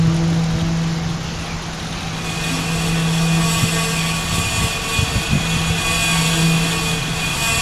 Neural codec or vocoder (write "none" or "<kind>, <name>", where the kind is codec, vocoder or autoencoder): none